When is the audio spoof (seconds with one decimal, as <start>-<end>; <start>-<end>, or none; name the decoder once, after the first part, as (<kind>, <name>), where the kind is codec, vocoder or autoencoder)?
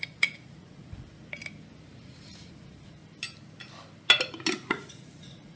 0.0-1.2 (vocoder, Vocos); 2.0-3.0; 4.7-5.6